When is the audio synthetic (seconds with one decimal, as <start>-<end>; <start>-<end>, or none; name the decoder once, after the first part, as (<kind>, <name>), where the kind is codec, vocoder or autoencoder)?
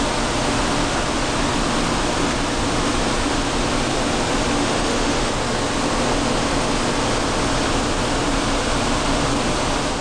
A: 4.6-5.3 (autoencoder, DAC-VAE)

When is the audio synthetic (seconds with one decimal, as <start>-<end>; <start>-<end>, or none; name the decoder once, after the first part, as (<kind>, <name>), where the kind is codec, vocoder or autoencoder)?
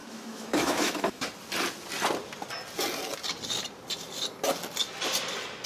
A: 0.0-1.2 (autoencoder, DAC-VAE)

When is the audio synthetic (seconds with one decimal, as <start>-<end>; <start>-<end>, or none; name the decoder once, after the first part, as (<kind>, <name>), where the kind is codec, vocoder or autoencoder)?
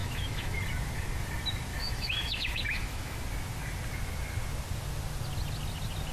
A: 0.0-0.6 (autoencoder, DAC-VAE); 1.7-3.2